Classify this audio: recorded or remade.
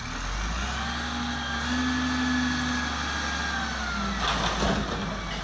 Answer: recorded